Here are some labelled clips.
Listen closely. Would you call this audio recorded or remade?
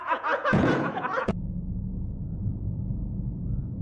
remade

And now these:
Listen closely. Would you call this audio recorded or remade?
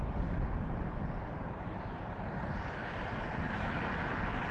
recorded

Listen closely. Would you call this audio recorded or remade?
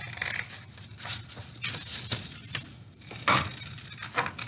recorded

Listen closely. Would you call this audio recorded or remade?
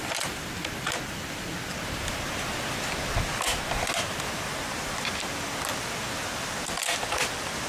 recorded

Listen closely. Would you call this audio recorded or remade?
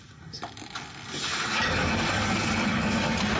recorded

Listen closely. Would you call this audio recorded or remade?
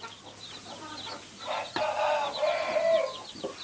recorded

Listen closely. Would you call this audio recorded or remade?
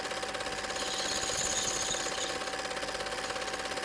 recorded